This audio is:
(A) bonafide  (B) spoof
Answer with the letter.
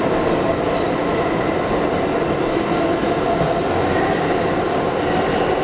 A